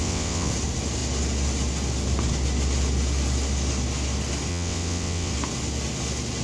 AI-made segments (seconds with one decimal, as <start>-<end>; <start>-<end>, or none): 0.0-0.5; 4.5-5.3